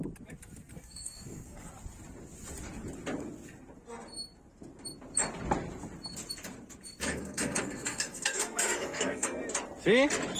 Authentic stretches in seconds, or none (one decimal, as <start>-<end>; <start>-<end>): 0.0-0.7; 1.7-7.1; 9.4-10.4